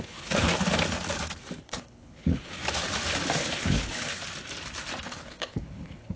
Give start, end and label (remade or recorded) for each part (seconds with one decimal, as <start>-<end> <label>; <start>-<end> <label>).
0.0-0.5 remade; 0.5-1.6 recorded; 1.6-2.6 remade; 2.6-3.4 recorded; 3.4-4.2 remade; 4.2-5.0 recorded; 5.0-6.2 remade

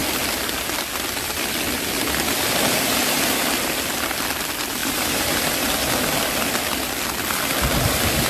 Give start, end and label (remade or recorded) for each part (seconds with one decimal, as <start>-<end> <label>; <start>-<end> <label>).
0.0-8.3 recorded

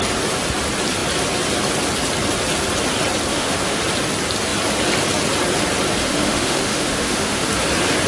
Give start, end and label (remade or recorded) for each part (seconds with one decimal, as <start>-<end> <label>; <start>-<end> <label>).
0.0-3.3 recorded; 3.3-3.8 remade; 3.8-6.0 recorded; 6.0-7.5 remade; 7.5-8.1 recorded

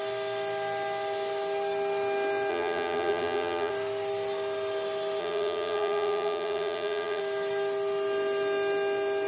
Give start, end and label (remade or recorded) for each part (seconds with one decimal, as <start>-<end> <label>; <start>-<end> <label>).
0.0-2.5 recorded; 2.5-3.7 remade; 3.7-5.2 recorded; 5.2-7.2 remade; 7.2-9.3 recorded

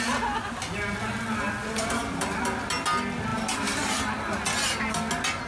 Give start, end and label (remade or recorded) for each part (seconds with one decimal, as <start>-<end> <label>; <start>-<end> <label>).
0.0-1.6 recorded; 1.6-2.2 remade; 2.2-3.3 recorded; 3.3-4.0 remade; 4.0-5.5 recorded